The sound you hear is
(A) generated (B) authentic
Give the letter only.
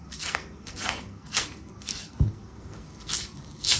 A